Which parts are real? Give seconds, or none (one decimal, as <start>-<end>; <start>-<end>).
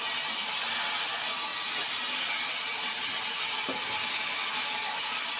0.0-5.4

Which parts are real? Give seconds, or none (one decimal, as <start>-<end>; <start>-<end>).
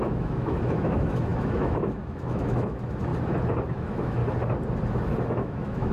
3.1-3.7; 4.2-5.3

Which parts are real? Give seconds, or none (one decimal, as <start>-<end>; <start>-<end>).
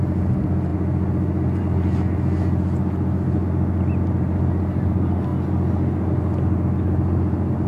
0.0-7.7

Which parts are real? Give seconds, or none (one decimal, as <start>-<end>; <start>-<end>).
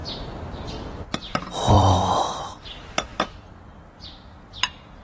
0.0-1.0; 3.1-5.0